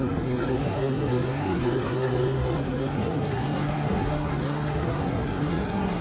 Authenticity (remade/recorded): remade